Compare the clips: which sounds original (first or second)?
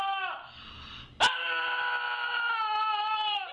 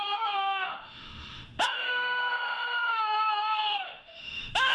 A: first